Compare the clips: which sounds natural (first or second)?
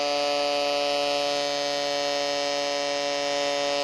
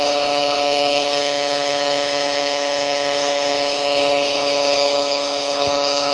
first